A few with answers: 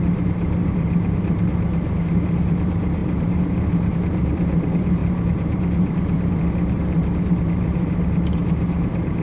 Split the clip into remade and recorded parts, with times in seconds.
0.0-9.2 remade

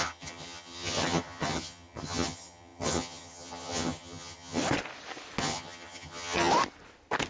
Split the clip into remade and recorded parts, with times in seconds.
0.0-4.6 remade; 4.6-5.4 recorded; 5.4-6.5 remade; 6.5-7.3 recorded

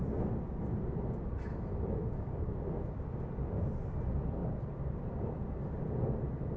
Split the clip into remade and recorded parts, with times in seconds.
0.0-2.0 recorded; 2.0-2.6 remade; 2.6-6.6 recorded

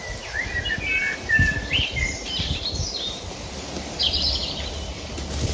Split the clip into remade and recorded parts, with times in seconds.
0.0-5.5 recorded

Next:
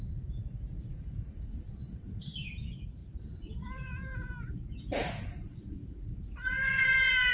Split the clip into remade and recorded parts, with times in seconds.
0.0-0.4 remade; 0.4-0.9 recorded; 0.9-7.3 remade